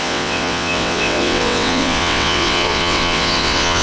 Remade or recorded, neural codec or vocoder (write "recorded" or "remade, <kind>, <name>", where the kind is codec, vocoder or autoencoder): remade, vocoder, WaveNeXt